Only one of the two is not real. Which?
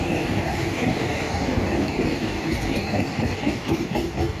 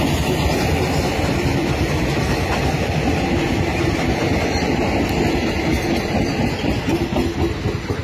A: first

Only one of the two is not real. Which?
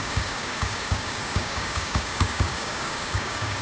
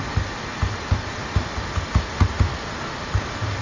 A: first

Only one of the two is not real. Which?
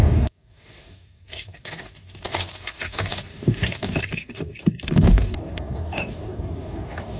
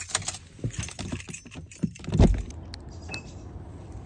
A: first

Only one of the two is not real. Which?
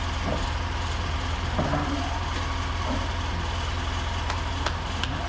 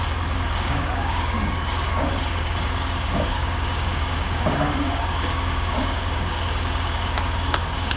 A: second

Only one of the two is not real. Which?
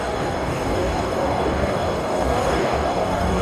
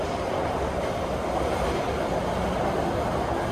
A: first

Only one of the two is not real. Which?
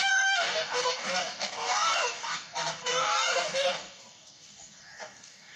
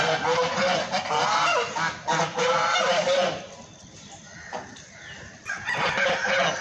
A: first